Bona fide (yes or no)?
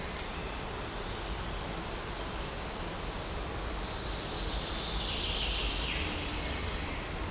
yes